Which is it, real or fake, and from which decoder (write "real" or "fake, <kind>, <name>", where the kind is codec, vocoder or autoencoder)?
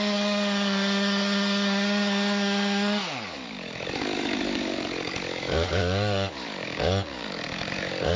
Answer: fake, codec, DAC